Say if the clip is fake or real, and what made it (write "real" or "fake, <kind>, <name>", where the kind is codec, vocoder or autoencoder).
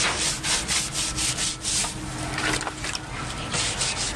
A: real